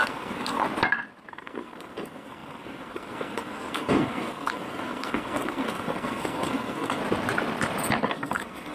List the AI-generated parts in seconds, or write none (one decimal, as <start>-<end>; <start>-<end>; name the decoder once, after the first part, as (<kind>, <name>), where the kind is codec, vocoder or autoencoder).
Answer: 0.0-0.6 (codec, SNAC); 1.3-7.0; 8.1-8.7